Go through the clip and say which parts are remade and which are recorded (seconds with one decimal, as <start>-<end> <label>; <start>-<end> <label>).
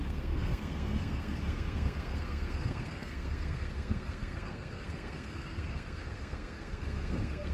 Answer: 0.0-7.5 remade